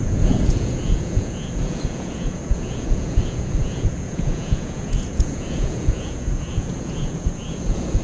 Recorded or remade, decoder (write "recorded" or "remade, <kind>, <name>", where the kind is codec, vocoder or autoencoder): remade, vocoder, Vocos